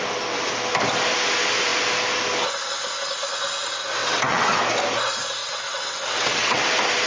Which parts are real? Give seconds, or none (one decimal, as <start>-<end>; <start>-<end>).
0.0-4.0; 4.6-5.4; 6.6-7.1